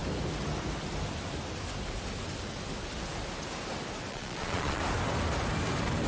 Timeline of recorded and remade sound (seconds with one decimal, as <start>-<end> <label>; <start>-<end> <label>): 0.0-4.1 recorded; 4.1-4.8 remade; 4.8-6.1 recorded